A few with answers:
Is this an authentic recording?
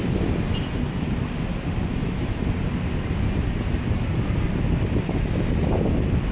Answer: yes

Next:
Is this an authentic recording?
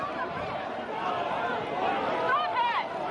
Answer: yes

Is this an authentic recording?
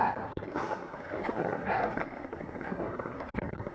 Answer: no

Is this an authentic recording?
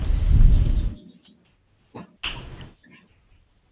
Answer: yes